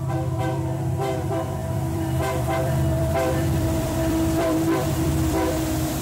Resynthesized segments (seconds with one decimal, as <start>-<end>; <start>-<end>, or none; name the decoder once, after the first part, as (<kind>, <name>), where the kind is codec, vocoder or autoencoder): 0.0-6.0 (vocoder, BigVGAN v2)